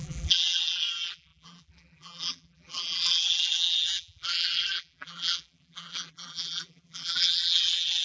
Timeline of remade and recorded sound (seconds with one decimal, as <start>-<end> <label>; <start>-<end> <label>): 0.0-8.0 remade